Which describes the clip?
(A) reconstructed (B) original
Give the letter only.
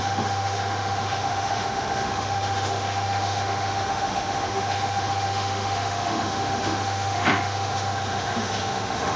A